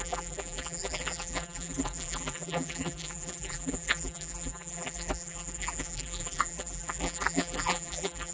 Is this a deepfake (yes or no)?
yes